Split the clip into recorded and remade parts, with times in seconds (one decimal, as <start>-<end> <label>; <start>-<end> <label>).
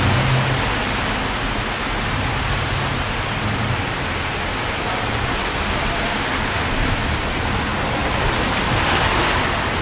0.0-9.8 recorded